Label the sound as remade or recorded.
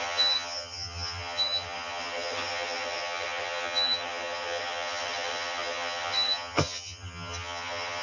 remade